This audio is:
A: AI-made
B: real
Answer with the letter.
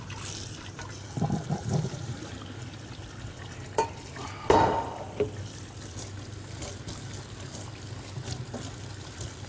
B